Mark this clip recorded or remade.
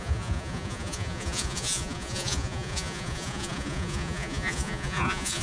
remade